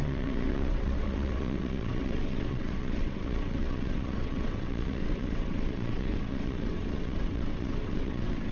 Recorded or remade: remade